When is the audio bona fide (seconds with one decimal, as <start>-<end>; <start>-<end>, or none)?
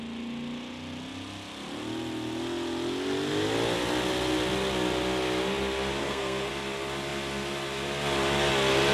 0.0-6.0; 6.5-8.9